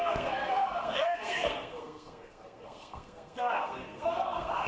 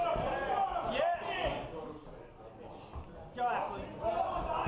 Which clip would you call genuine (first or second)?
second